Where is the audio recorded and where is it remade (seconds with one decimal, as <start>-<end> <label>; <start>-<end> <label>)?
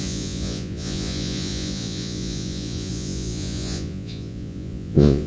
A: 0.0-5.3 remade